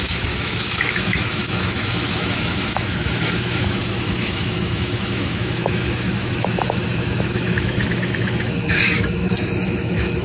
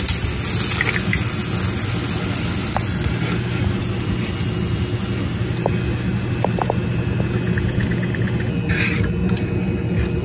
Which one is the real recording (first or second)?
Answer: second